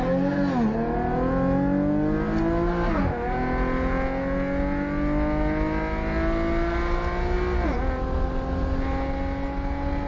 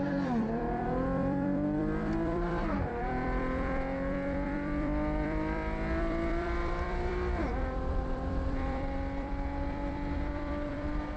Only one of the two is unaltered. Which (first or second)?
first